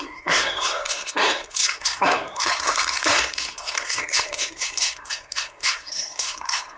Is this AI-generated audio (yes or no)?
yes